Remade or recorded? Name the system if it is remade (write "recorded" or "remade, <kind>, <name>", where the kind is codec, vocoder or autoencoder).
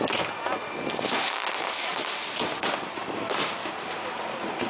recorded